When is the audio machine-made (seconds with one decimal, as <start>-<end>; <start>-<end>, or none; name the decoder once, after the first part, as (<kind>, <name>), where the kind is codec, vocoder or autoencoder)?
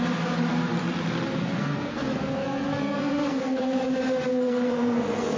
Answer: 1.4-3.8 (codec, SNAC); 4.3-5.4